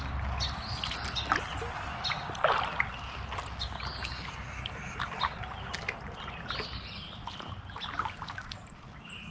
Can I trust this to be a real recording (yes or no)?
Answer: yes